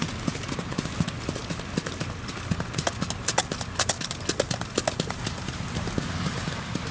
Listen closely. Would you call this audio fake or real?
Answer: real